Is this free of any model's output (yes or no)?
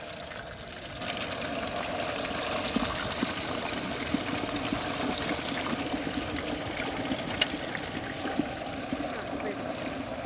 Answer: yes